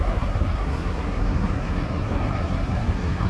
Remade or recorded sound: remade